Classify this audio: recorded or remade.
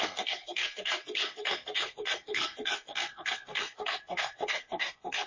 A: remade